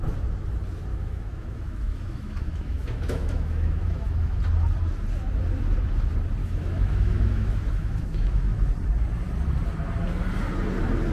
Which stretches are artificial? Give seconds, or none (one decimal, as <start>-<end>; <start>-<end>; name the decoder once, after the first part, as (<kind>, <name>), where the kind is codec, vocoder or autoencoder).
0.9-4.4 (autoencoder, DAC-VAE); 6.4-8.7